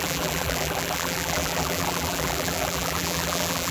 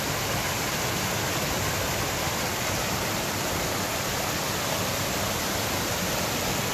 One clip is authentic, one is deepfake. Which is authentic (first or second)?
second